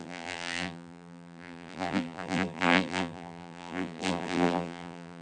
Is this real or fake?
fake